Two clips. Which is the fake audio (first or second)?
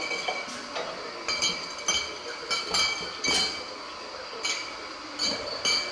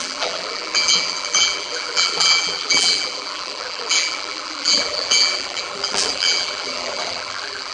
second